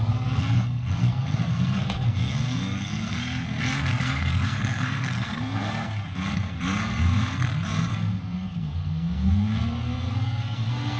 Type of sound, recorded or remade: remade